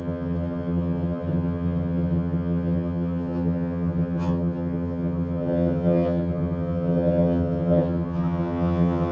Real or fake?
fake